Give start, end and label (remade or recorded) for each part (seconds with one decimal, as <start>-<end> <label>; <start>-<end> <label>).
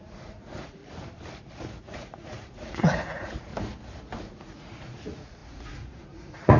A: 0.0-0.8 remade; 0.8-1.8 recorded; 1.8-3.5 remade; 3.5-4.2 recorded; 4.2-6.6 remade